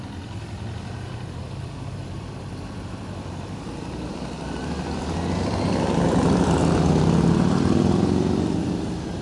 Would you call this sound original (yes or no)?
no